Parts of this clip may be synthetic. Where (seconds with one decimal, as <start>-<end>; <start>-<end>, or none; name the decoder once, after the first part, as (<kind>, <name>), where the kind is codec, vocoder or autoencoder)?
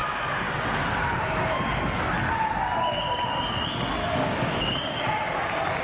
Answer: 4.0-5.1 (codec, DAC)